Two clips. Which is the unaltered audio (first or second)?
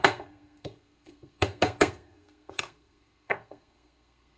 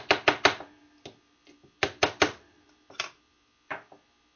second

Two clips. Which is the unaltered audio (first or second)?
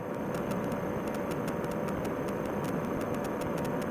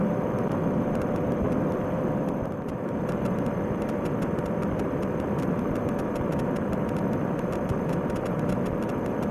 first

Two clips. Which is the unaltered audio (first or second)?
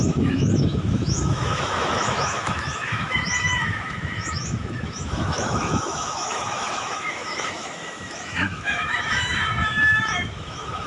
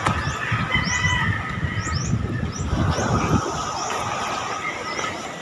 second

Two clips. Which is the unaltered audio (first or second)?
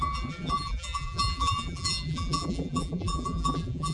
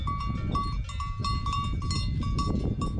second